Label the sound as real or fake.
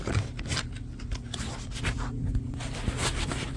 real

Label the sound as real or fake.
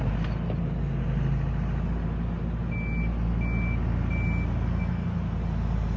real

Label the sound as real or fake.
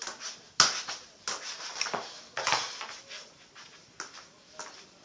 real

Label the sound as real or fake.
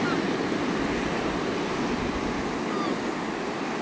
real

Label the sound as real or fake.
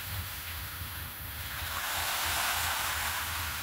fake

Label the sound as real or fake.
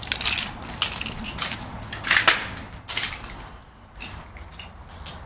real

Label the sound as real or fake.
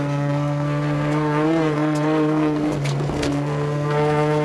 fake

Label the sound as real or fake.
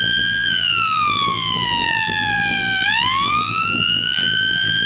fake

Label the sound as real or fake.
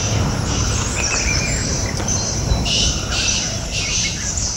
fake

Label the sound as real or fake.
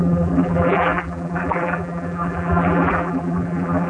fake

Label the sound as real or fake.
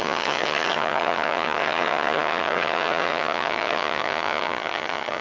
fake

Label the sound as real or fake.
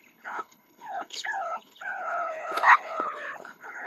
fake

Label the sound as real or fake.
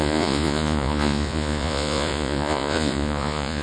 fake